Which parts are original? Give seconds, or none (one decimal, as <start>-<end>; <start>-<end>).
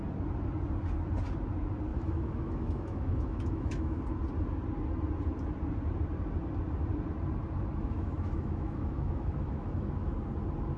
0.0-1.9; 4.0-7.8; 10.1-10.8